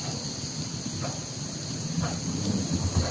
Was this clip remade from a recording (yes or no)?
no